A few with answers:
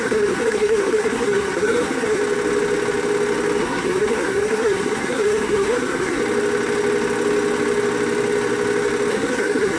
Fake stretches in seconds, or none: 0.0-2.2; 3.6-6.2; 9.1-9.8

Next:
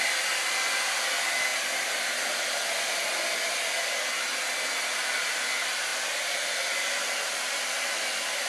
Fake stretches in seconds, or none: none

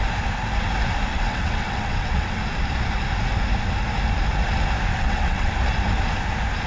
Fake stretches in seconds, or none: 1.1-2.4; 4.9-5.5